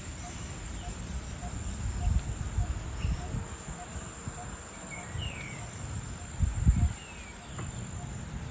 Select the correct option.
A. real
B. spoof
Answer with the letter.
A